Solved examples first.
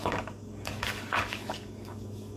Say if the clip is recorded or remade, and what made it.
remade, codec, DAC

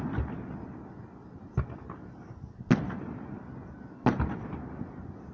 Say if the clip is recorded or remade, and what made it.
recorded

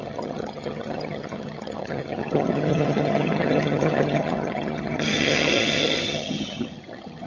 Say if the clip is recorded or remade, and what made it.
remade, vocoder, HiFi-GAN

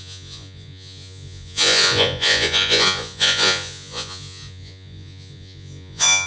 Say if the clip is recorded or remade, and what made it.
remade, vocoder, Vocos